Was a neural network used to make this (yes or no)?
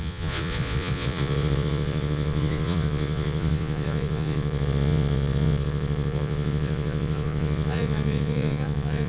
yes